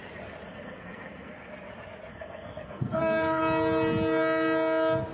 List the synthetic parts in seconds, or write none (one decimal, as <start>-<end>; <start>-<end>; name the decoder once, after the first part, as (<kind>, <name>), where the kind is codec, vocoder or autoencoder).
0.5-1.5 (codec, SNAC); 2.1-3.4